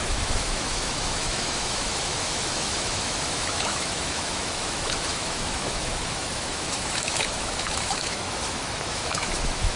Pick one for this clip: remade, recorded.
remade